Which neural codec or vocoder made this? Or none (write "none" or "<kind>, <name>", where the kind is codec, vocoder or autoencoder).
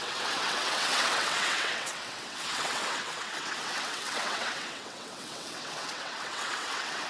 vocoder, WaveNeXt